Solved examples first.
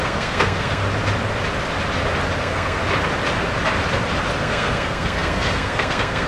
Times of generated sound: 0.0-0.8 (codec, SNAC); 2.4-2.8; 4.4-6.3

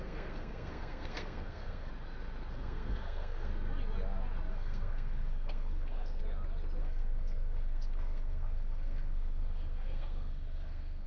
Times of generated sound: 0.0-1.9 (codec, SNAC); 2.5-3.5; 4.5-6.2; 6.8-11.1